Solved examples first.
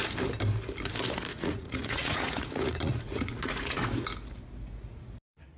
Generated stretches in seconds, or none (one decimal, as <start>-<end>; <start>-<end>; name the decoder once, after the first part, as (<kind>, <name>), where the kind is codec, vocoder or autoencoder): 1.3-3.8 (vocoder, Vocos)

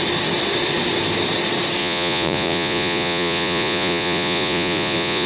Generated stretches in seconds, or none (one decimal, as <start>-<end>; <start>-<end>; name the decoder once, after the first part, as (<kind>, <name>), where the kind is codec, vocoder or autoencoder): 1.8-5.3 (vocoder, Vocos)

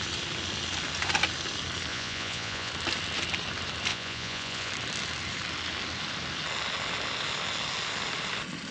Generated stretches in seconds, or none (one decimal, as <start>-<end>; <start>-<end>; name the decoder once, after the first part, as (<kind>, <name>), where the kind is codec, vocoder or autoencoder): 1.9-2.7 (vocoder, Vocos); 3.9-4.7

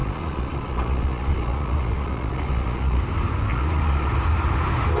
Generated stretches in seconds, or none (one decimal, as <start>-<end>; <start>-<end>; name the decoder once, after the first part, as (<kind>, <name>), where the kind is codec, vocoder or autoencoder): 0.0-3.0 (vocoder, Vocos); 3.5-4.1

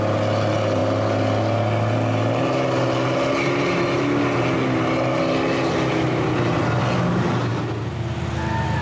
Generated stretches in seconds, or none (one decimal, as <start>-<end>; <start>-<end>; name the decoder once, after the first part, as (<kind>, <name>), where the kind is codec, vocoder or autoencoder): none